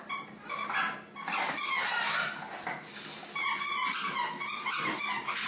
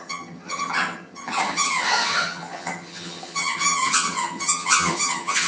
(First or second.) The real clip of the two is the first